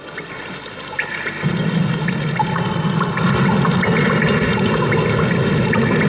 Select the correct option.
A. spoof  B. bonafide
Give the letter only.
A